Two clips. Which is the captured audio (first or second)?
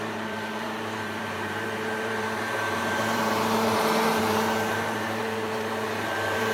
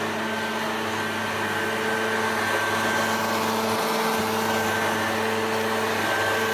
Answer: second